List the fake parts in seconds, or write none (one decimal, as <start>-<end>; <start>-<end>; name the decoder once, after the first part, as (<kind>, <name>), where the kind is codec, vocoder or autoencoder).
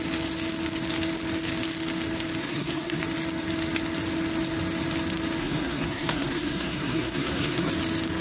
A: 2.4-3.0 (codec, SNAC); 5.4-7.7